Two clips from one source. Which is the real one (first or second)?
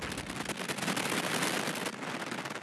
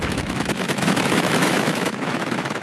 first